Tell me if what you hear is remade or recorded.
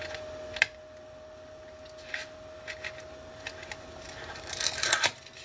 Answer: recorded